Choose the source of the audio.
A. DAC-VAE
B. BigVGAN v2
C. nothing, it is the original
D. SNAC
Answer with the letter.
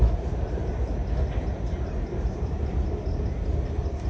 C